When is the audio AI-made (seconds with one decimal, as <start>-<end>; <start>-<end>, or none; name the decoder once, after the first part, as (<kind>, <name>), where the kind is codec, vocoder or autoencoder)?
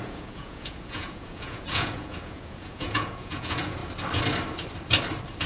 0.0-3.8 (vocoder, Vocos)